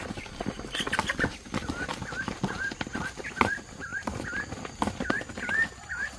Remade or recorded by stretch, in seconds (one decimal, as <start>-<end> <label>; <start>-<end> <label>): 0.0-6.2 recorded